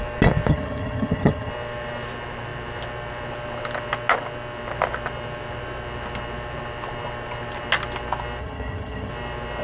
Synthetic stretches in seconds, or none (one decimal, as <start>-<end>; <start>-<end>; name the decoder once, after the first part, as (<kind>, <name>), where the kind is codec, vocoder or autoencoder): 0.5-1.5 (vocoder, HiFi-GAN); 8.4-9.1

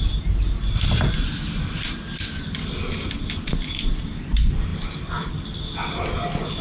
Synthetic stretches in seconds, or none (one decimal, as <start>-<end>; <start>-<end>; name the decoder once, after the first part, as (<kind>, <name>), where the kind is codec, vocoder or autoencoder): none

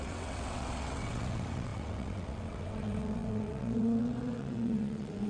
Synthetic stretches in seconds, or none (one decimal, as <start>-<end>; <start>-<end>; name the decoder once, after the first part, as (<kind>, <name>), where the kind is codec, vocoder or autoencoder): 0.0-5.3 (vocoder, WaveNeXt)

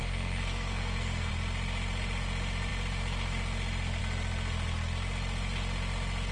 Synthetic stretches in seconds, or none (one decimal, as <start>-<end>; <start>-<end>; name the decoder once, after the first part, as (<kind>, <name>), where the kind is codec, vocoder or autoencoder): 0.0-1.3 (codec, SNAC)

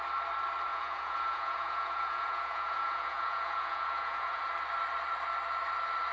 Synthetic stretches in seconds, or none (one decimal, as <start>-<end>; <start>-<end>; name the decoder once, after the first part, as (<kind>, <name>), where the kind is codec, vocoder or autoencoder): 0.7-4.4 (vocoder, Vocos)

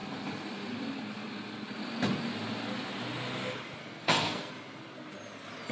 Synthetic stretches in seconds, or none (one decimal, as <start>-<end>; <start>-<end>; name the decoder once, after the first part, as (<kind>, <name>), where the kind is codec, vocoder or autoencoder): 3.8-4.5 (codec, SNAC)

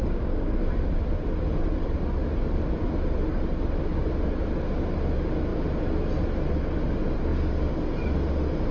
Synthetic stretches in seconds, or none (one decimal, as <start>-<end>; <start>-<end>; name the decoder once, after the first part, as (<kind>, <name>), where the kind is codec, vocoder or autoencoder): 0.0-0.6 (codec, DAC)

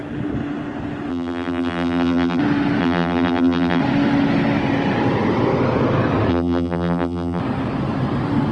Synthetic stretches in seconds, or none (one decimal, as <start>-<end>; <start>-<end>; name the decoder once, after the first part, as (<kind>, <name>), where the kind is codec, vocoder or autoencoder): 1.1-2.4 (vocoder, BigVGAN v2); 2.8-3.8; 6.3-7.4